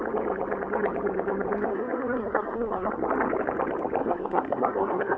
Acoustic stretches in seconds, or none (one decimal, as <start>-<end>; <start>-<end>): 0.0-1.7; 2.9-4.0